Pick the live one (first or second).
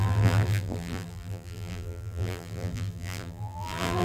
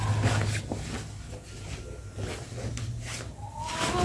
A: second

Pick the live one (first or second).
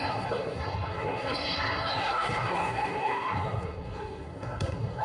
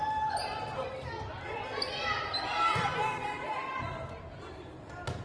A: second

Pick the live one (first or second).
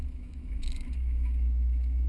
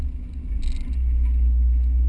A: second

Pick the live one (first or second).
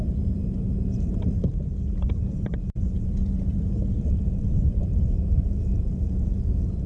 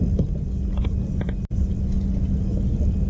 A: second